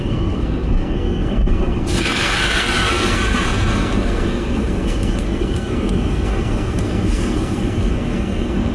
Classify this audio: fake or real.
fake